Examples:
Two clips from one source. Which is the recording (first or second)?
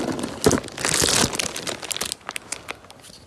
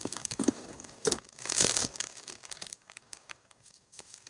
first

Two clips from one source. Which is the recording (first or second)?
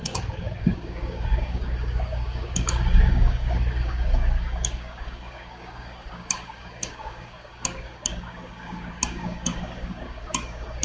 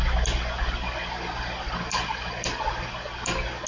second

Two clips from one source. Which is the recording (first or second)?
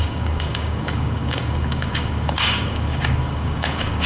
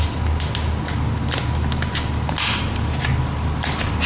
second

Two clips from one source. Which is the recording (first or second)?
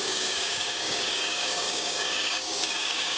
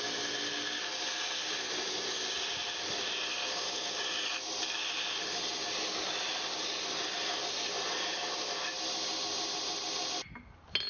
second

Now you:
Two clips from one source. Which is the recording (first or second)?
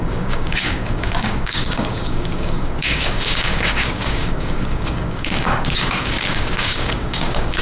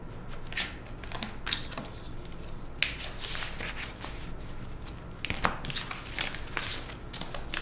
second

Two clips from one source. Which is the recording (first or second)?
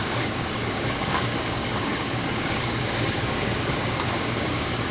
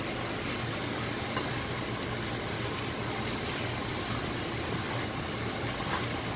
second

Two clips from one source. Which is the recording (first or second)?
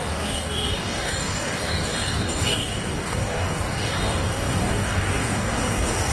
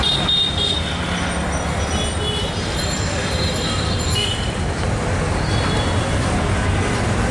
second